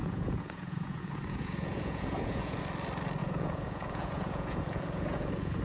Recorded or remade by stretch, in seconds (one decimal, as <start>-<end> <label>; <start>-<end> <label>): 0.0-2.6 remade; 2.6-3.2 recorded; 3.2-5.6 remade